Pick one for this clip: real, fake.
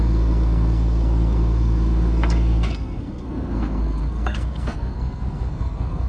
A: fake